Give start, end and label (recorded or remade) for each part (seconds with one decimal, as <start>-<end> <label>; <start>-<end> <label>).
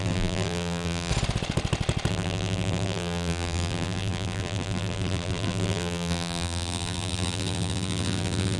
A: 0.0-1.1 remade; 1.1-2.1 recorded; 2.1-8.6 remade